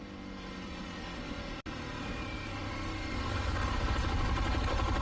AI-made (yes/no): no